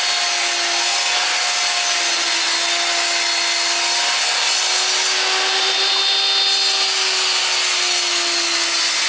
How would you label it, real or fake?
real